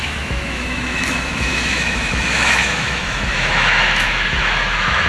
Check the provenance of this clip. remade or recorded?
remade